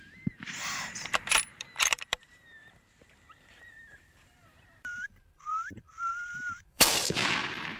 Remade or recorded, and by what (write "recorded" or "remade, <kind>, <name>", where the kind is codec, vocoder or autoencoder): remade, vocoder, BigVGAN v2